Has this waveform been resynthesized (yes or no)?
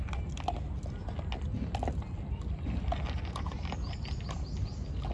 no